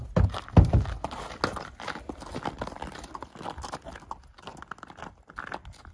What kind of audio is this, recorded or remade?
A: recorded